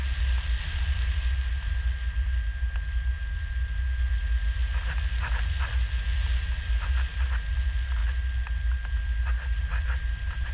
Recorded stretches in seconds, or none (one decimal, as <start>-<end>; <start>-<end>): 0.0-10.5